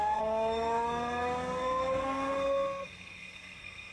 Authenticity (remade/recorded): remade